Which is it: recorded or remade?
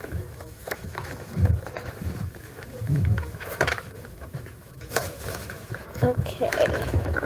remade